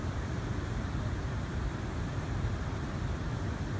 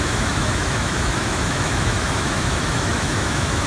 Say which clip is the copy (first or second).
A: second